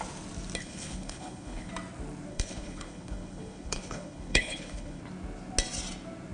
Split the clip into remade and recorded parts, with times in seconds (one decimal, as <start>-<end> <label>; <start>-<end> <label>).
0.0-0.6 recorded; 0.6-1.7 remade; 1.7-2.3 recorded; 2.3-5.0 remade; 5.0-6.3 recorded